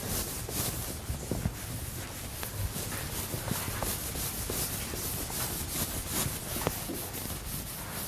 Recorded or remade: recorded